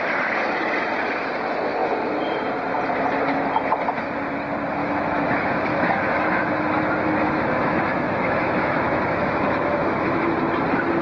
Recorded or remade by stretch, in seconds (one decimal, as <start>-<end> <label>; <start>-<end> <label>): 0.0-4.8 recorded; 4.8-5.3 remade; 5.3-5.7 recorded; 5.7-10.2 remade; 10.2-11.0 recorded